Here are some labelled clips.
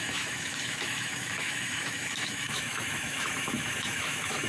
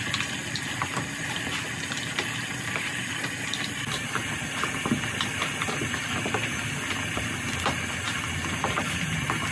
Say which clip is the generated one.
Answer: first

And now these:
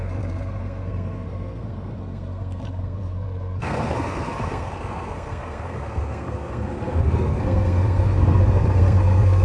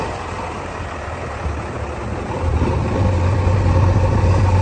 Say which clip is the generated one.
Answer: first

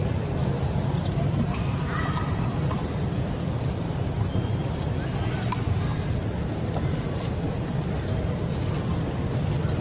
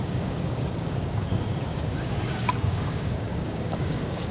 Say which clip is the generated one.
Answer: second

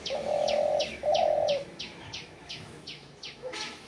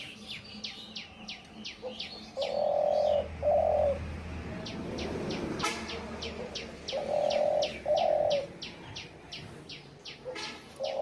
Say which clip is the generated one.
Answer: first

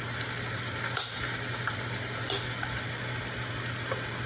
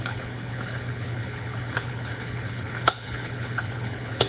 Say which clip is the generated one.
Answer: second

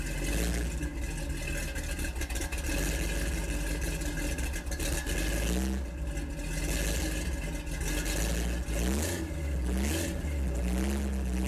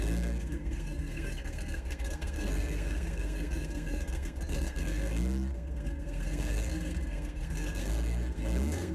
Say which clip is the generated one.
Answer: second